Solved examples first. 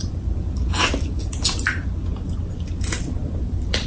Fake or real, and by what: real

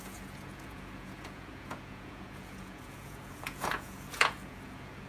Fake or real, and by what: fake, vocoder, Vocos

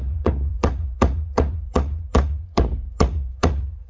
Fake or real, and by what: fake, vocoder, Vocos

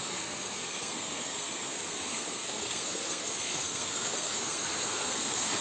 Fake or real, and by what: fake, codec, SNAC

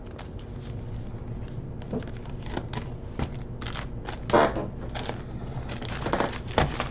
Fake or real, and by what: real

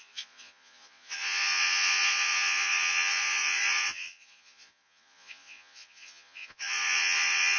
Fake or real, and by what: fake, vocoder, Vocos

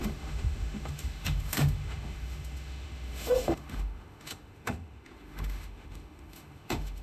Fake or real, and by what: fake, autoencoder, DAC-VAE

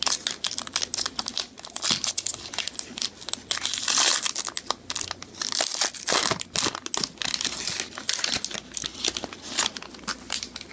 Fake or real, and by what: real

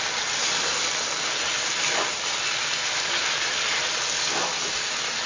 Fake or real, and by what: real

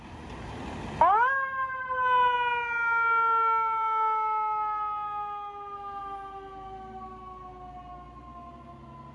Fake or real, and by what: real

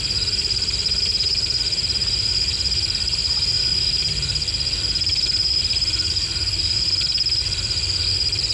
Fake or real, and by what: real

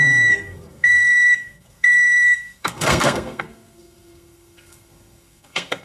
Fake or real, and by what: fake, codec, SNAC